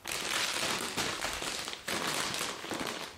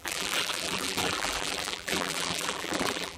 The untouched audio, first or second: first